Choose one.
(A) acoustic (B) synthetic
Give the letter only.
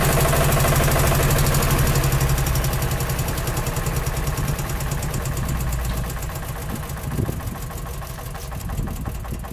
A